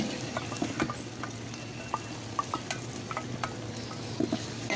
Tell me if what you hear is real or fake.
real